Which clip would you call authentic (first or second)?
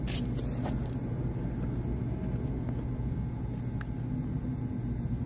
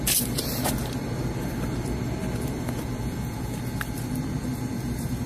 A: first